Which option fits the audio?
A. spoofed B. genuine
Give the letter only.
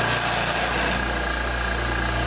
B